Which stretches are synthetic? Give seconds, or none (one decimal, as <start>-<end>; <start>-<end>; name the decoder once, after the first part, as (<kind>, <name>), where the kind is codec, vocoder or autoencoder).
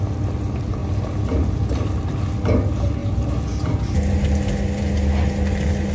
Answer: 0.8-2.0 (vocoder, BigVGAN v2)